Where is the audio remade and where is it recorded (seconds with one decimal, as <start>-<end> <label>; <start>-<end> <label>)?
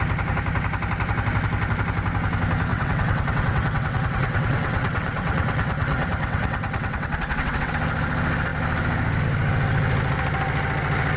0.0-2.7 recorded; 2.7-7.7 remade; 7.7-11.2 recorded